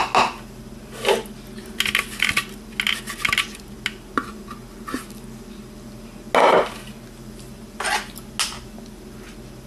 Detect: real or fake real